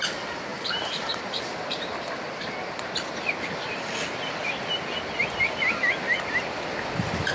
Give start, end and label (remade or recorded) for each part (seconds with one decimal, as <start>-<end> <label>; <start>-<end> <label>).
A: 0.0-0.5 recorded; 0.5-1.4 remade; 1.4-7.3 recorded